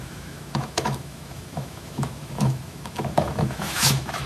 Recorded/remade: remade